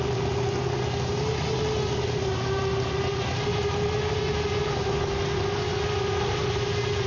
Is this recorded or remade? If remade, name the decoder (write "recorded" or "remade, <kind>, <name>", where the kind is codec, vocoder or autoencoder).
recorded